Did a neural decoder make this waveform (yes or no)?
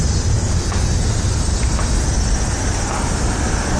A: no